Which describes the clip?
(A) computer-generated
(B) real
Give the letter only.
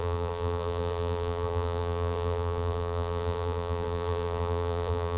A